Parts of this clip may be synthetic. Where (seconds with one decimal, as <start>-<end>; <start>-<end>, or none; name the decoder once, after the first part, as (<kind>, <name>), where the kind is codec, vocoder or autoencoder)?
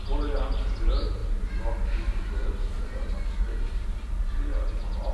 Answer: none